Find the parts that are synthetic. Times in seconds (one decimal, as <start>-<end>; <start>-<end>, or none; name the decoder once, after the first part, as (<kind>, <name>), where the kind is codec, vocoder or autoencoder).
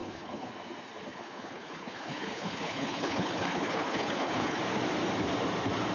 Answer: 0.0-0.5 (codec, HILCodec); 1.1-4.6